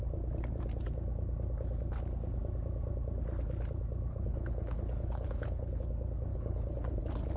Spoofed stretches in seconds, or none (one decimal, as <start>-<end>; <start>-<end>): 4.1-5.8; 6.3-7.0